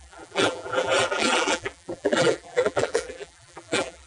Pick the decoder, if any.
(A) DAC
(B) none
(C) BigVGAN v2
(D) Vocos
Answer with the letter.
C